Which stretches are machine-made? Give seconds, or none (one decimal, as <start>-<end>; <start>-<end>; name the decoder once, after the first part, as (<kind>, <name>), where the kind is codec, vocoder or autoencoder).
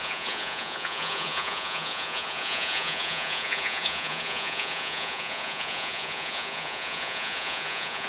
0.0-8.1 (vocoder, Vocos)